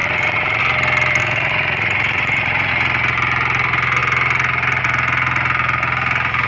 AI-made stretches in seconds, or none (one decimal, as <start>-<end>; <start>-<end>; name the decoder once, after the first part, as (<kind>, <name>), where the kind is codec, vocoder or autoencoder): 0.0-0.6 (vocoder, Vocos); 1.2-2.7